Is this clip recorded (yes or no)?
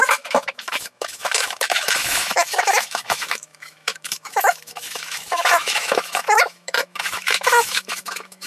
no